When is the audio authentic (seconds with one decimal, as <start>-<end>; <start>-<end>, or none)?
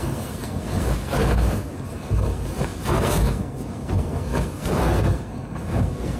none